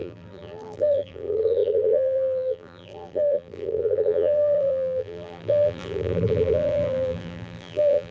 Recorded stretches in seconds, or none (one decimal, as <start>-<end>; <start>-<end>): none